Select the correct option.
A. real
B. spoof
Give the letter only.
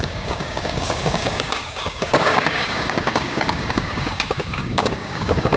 B